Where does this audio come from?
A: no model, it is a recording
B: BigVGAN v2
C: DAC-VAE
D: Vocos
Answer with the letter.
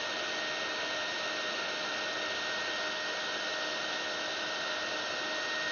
A